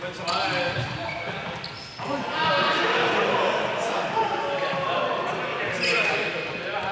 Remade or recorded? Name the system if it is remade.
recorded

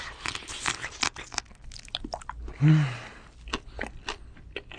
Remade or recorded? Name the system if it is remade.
recorded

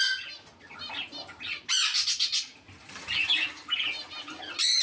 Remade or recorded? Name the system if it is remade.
recorded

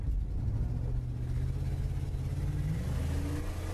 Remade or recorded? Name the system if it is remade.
recorded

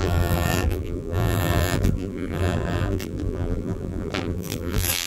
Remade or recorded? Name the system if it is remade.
remade, vocoder, BigVGAN v2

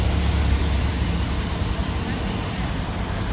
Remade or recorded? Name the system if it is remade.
remade, vocoder, BigVGAN v2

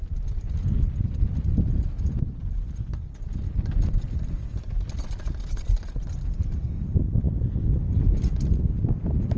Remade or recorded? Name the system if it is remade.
recorded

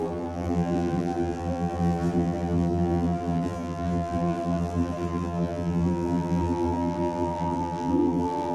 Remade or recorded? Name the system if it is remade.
remade, vocoder, BigVGAN v2